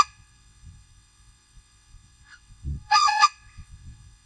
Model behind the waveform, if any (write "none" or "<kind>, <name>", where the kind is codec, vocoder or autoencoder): vocoder, WaveNeXt